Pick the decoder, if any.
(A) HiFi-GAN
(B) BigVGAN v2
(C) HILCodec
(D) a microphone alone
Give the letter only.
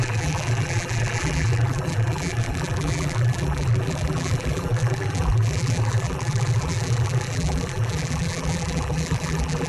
B